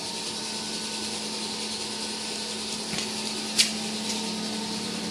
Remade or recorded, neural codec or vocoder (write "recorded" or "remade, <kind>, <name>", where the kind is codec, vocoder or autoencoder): recorded